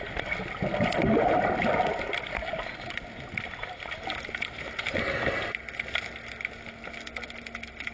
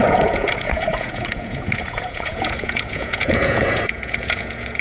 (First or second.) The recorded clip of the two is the first